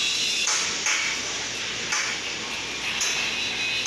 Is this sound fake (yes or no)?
no